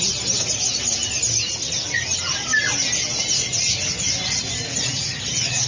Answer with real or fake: real